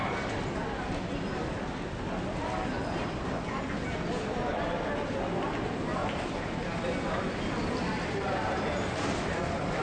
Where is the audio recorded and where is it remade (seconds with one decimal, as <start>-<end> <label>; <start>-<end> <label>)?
0.0-9.8 recorded